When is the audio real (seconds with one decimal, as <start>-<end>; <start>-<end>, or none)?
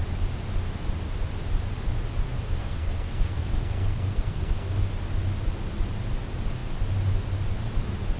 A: 0.0-2.6; 4.8-8.2